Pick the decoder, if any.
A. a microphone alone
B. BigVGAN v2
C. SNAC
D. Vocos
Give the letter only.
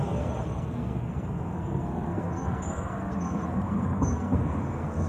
C